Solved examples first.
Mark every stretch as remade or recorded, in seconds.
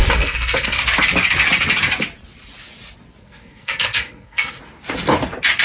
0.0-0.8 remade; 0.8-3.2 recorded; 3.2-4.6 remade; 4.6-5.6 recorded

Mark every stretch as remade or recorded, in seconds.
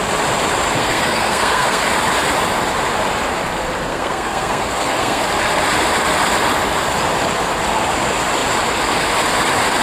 0.0-0.8 recorded; 0.8-1.8 remade; 1.8-3.9 recorded; 3.9-5.2 remade; 5.2-9.8 recorded